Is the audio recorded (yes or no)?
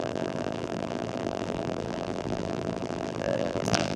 no